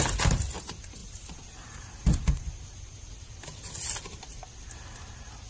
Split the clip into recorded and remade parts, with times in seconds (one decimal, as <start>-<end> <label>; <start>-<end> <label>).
0.0-1.0 recorded; 1.0-3.7 remade; 3.7-5.5 recorded